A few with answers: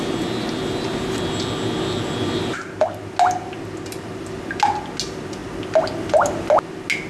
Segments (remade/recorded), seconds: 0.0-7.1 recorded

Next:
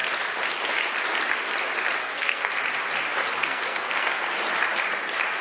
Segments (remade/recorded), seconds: 0.0-2.0 recorded; 2.0-2.5 remade; 2.5-3.4 recorded; 3.4-4.3 remade; 4.3-5.4 recorded

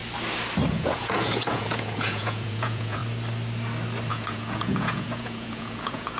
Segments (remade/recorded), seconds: 0.0-0.7 recorded; 0.7-3.0 remade; 3.0-4.1 recorded; 4.1-6.2 remade